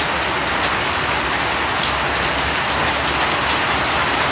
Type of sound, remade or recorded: recorded